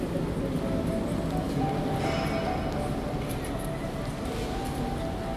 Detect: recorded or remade recorded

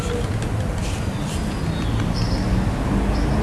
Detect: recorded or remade recorded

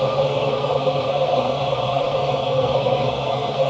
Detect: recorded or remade remade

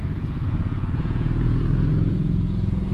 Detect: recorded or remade remade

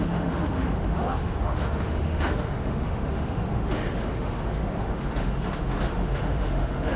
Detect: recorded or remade remade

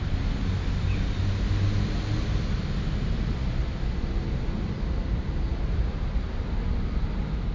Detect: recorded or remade recorded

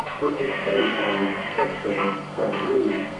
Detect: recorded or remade remade